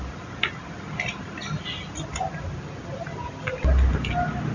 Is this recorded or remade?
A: recorded